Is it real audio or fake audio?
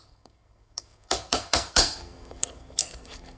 fake